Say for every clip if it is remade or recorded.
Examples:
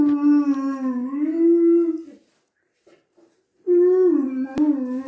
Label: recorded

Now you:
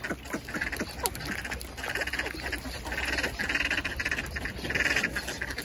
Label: recorded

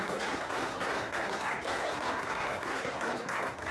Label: remade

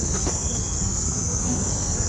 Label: remade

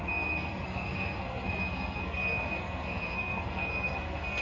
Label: remade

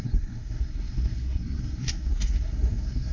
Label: remade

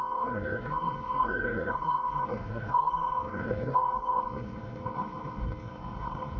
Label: remade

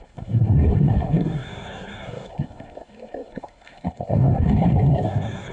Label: remade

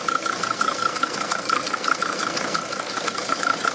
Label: remade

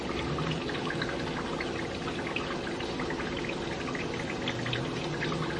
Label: recorded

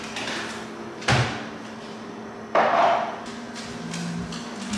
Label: recorded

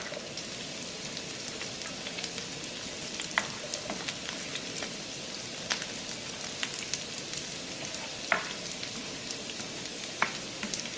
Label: recorded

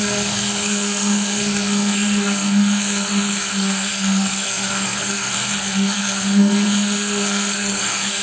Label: remade